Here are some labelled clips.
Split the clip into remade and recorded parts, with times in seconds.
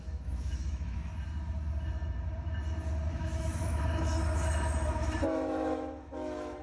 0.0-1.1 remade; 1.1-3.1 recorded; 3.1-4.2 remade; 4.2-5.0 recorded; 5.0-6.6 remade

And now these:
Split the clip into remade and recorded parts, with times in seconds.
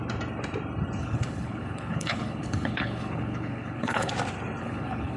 0.0-1.0 recorded; 1.0-4.1 remade; 4.1-4.6 recorded; 4.6-5.2 remade